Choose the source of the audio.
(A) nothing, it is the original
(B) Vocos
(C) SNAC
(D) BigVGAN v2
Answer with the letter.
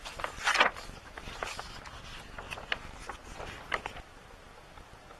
A